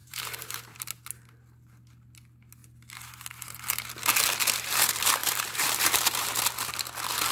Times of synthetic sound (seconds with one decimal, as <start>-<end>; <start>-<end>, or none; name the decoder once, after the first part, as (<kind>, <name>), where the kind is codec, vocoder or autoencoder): 0.0-0.8 (vocoder, BigVGAN v2); 5.2-6.4